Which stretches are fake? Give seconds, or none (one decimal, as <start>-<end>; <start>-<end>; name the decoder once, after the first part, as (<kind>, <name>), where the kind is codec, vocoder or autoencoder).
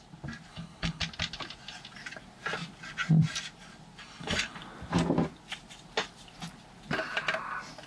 0.5-1.0 (codec, HILCodec); 4.0-4.6